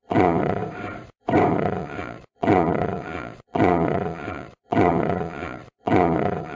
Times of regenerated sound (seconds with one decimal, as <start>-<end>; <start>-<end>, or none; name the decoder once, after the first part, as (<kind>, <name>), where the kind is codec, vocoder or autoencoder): 0.0-0.6 (vocoder, Vocos); 1.5-6.5